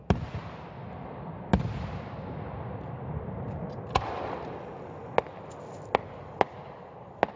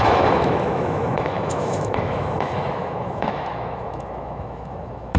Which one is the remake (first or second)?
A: second